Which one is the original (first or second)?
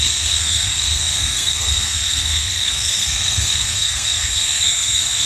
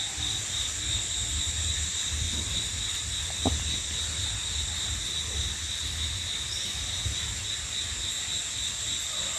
second